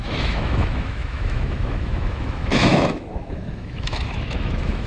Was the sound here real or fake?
fake